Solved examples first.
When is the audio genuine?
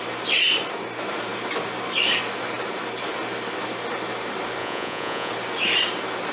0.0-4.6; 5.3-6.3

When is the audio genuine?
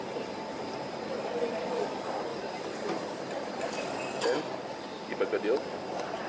0.0-6.3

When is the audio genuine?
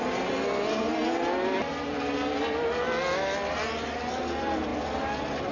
0.0-5.5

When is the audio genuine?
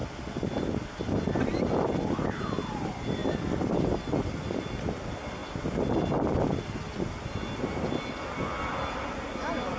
0.0-9.8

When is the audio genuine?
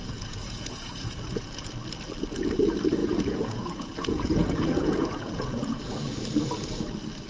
1.7-3.0; 6.2-7.3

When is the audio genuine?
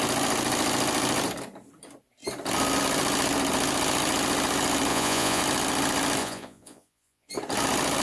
0.0-4.9; 5.4-6.2; 7.3-8.0